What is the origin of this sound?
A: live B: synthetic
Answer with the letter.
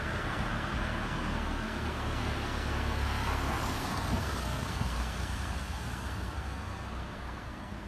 B